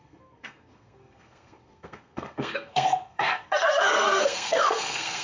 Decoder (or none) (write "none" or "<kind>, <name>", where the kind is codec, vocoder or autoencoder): codec, SNAC